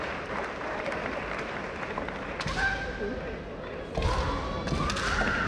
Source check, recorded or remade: recorded